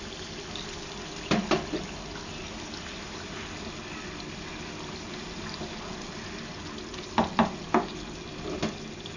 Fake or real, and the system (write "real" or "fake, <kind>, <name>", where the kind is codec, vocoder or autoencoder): real